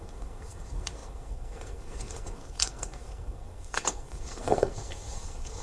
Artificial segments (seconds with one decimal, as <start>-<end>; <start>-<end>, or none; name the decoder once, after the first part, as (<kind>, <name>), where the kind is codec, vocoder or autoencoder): 0.0-5.6 (codec, SNAC)

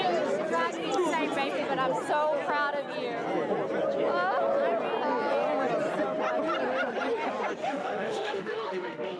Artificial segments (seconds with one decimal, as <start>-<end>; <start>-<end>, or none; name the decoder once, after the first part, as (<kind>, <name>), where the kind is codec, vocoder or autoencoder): 7.6-9.2 (autoencoder, DAC-VAE)